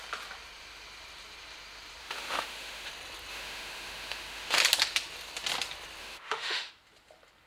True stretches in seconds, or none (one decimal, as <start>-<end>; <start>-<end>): 0.0-2.0; 2.9-3.3; 4.6-6.0; 6.7-7.5